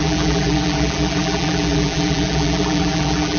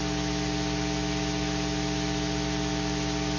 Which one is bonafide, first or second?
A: second